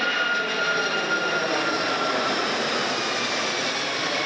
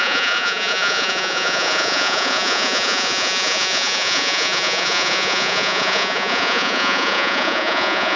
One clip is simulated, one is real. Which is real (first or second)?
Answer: first